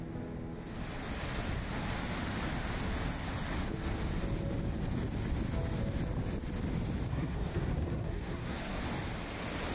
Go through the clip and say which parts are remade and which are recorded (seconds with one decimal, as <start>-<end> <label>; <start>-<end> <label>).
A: 0.0-7.1 recorded; 7.1-8.8 remade; 8.8-9.7 recorded